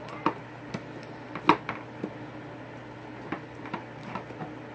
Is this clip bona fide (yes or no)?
yes